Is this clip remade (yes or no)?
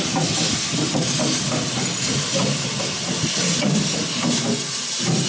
no